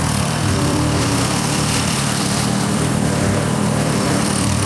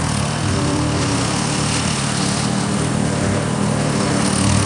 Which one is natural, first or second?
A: second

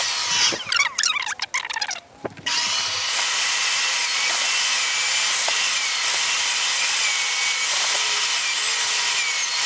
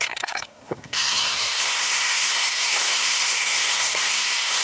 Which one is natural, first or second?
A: first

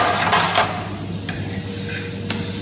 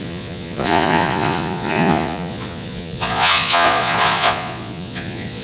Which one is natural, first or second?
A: first